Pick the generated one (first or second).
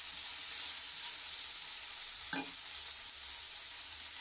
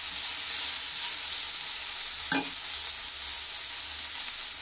first